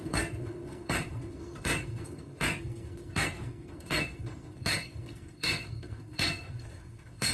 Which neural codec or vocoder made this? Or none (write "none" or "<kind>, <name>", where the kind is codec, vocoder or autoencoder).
codec, SNAC